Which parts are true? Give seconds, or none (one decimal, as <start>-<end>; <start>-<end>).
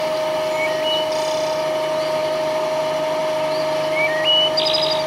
0.0-2.2; 2.8-5.1